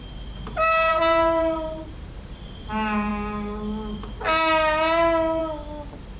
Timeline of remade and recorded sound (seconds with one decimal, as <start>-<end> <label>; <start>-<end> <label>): 0.0-0.9 recorded; 0.9-2.3 remade; 2.3-6.2 recorded